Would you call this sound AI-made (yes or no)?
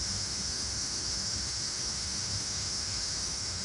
yes